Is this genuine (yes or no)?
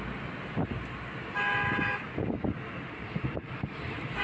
yes